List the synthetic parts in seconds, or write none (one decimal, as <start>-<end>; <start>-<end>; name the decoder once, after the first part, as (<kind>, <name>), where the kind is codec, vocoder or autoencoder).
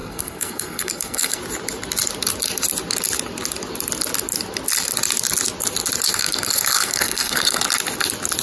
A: 0.0-1.4 (codec, SNAC); 6.1-7.6